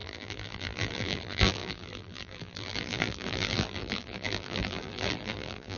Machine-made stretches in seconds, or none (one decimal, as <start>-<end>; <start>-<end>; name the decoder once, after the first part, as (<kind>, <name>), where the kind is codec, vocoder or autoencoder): 0.0-5.8 (vocoder, BigVGAN v2)